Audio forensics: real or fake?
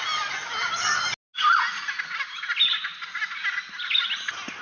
real